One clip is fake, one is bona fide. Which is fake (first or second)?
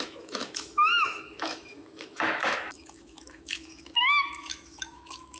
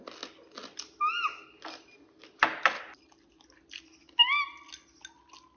first